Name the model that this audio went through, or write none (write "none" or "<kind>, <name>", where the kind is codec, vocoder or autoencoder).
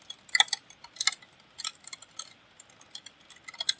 none